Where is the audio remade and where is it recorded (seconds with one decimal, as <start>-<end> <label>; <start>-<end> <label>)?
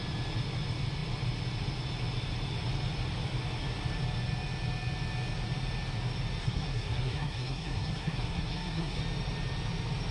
0.0-6.4 recorded; 6.4-9.0 remade; 9.0-10.1 recorded